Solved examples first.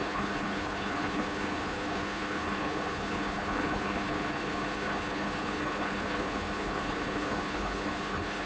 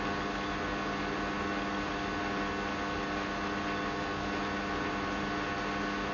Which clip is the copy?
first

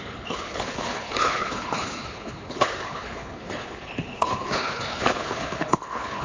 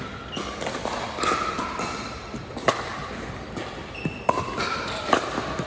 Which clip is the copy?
first